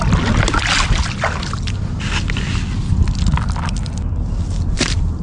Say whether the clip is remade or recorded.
recorded